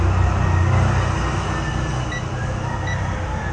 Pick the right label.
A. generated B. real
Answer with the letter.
B